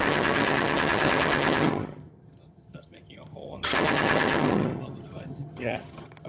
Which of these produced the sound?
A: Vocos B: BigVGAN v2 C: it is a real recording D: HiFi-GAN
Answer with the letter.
D